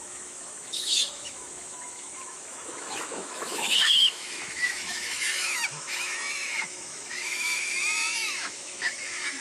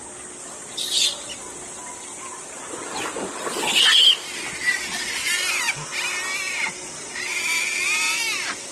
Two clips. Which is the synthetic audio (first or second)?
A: first